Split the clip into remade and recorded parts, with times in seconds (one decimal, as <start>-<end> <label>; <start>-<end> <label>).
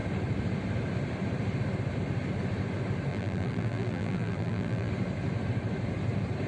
0.0-3.1 recorded; 3.1-4.9 remade; 4.9-6.5 recorded